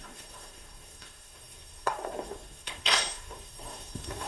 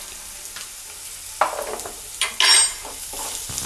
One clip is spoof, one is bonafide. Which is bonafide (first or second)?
second